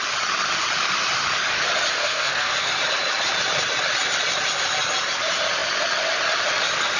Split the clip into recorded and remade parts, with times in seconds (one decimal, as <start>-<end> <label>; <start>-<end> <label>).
0.0-2.0 recorded; 2.0-2.7 remade; 2.7-7.0 recorded